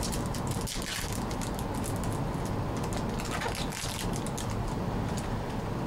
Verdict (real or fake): real